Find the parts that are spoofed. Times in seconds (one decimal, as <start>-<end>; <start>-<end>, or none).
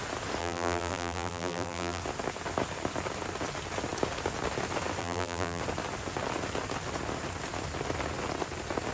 0.4-2.0; 5.0-5.6